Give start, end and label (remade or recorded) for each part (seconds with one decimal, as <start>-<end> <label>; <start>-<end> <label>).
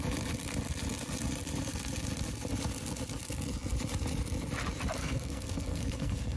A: 0.0-5.0 recorded; 5.0-6.4 remade